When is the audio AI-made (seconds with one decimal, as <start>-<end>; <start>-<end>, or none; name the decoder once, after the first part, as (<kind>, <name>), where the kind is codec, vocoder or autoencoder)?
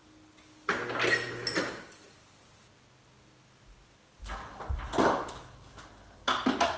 none